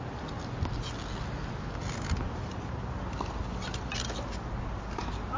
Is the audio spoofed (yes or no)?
no